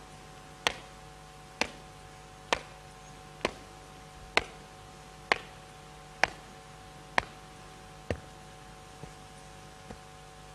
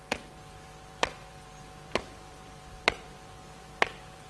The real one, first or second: first